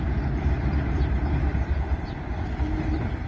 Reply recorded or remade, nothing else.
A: remade